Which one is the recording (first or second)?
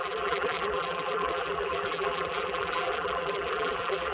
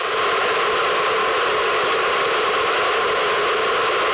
second